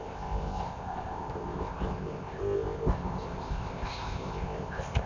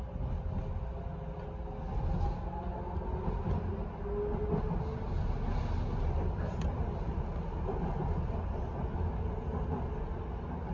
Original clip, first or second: second